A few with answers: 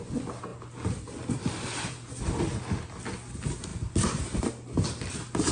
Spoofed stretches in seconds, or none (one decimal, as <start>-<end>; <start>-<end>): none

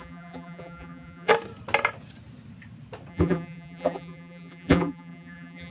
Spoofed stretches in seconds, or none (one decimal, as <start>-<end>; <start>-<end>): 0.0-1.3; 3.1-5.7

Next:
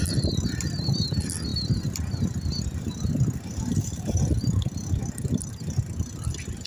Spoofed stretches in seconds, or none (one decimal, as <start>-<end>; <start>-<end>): 1.5-5.0

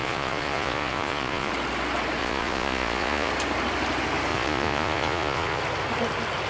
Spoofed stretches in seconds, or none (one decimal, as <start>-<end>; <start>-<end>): 0.0-1.5; 2.2-3.3; 4.3-5.6

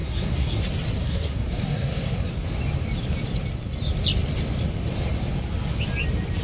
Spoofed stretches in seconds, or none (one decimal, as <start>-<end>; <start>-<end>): 0.0-0.6; 1.0-2.3

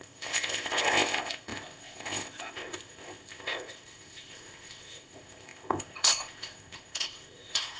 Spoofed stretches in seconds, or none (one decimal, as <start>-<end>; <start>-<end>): 0.0-7.8